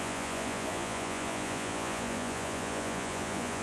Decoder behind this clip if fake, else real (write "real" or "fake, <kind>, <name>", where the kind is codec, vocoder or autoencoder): fake, vocoder, Vocos